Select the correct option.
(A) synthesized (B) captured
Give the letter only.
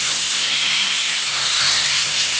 A